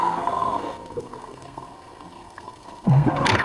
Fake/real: fake